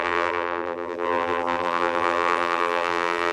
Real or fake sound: fake